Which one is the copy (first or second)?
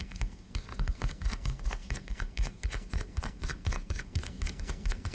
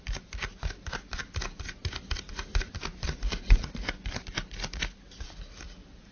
first